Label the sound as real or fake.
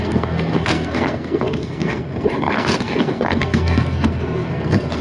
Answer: fake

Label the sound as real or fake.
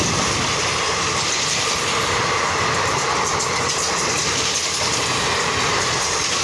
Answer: real